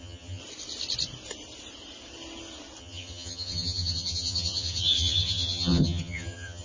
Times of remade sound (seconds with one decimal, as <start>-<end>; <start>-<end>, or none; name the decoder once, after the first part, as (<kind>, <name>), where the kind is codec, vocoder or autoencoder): 0.0-0.4 (vocoder, HiFi-GAN); 2.8-6.6